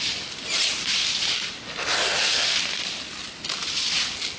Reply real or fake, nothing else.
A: real